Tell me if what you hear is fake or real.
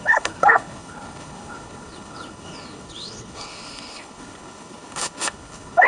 fake